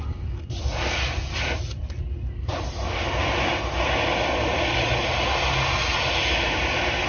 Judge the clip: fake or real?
real